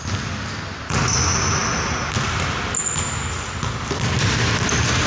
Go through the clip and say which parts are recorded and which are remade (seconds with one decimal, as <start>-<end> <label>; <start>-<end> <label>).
0.0-5.1 recorded